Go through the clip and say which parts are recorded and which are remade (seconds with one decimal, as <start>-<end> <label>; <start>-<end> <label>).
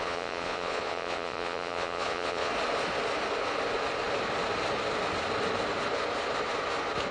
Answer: 0.0-2.5 remade; 2.5-7.1 recorded